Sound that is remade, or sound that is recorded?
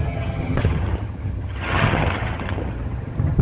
remade